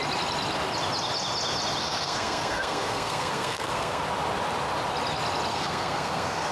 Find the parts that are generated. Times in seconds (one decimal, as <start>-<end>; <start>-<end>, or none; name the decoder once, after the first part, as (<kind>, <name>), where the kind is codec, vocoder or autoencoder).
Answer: 1.8-4.0 (codec, SNAC); 5.5-6.5